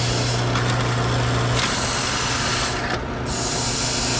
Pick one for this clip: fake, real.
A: real